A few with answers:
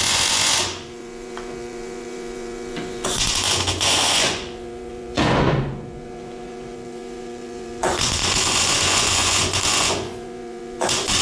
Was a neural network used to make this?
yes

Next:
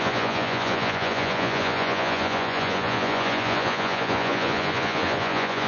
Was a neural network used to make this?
yes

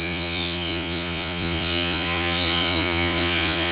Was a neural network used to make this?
yes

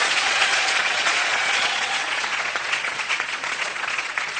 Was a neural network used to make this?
yes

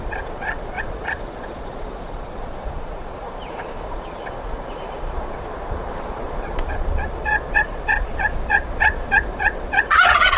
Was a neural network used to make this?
yes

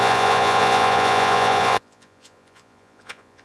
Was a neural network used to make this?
yes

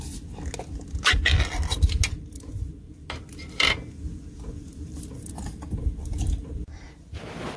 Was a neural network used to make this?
no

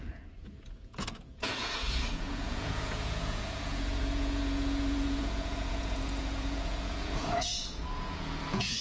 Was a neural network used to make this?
yes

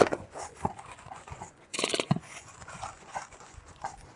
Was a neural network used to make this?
yes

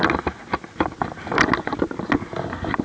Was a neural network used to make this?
no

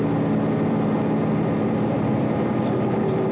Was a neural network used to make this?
no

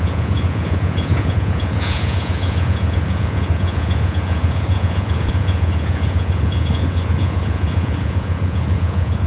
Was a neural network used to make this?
yes